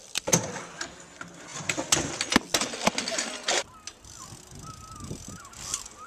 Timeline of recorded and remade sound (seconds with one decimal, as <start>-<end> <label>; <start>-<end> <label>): 0.0-6.1 recorded